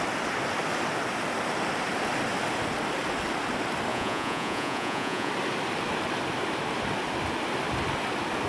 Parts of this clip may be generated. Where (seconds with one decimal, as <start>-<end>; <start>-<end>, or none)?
3.9-5.3